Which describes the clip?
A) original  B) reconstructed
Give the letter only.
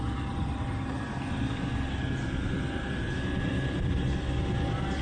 A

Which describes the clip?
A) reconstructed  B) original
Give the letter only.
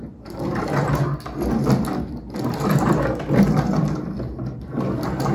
B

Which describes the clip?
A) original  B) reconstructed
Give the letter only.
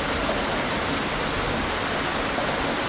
A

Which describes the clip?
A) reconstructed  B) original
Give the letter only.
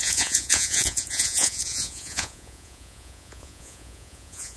A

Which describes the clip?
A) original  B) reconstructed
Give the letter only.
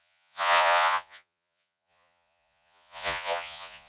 B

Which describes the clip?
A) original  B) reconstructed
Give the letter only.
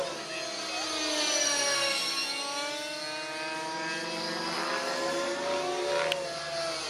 A